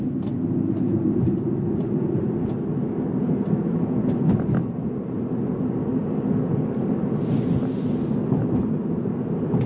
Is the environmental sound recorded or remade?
recorded